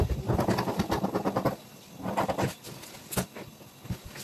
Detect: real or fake real